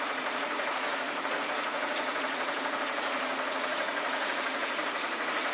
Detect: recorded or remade remade